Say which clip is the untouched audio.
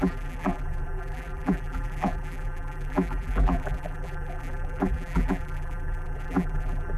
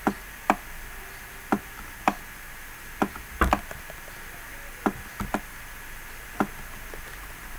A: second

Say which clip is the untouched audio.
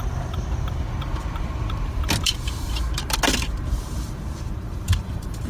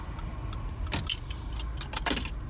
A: second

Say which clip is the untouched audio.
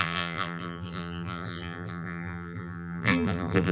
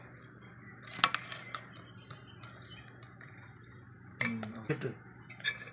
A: second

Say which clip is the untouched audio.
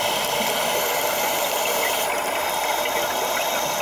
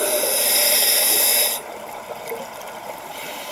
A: first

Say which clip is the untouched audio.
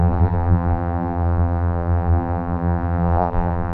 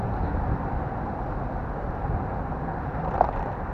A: second